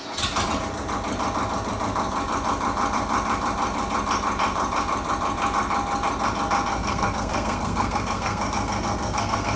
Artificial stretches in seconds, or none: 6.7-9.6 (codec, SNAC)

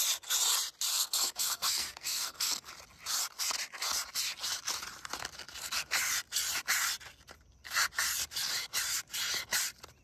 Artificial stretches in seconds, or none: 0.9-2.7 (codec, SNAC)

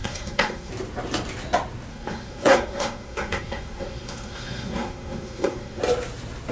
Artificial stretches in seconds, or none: 0.0-0.7 (codec, SNAC); 1.9-5.8

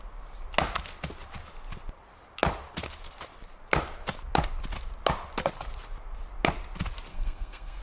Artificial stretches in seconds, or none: 7.1-7.8 (codec, SNAC)